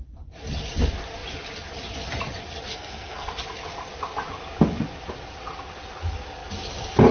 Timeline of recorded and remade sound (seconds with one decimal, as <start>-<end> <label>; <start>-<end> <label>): 0.0-2.7 recorded; 2.7-3.3 remade; 3.3-7.1 recorded